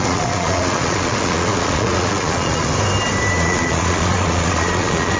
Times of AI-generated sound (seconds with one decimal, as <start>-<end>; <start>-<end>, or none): 0.0-2.7; 3.3-5.2